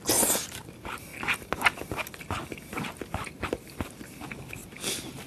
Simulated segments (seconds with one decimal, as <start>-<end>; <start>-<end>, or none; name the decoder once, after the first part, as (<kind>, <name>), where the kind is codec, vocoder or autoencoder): none

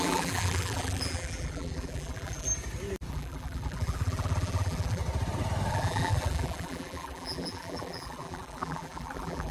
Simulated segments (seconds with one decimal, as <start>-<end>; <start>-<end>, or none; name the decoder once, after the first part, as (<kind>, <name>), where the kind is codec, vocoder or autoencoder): 0.0-2.5 (vocoder, BigVGAN v2); 3.1-5.0; 5.7-9.5